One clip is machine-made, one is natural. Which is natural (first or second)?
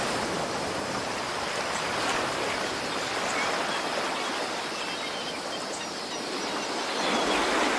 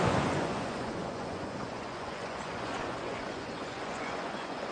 first